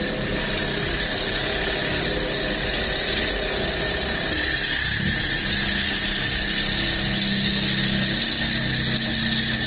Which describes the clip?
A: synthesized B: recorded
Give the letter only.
B